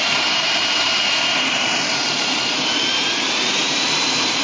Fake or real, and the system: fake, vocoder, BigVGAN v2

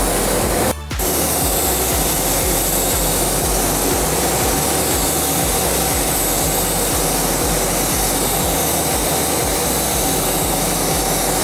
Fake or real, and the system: real